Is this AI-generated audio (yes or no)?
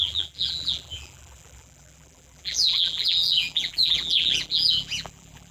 yes